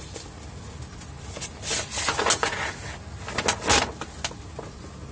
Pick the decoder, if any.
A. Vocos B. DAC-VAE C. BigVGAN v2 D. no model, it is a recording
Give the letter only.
D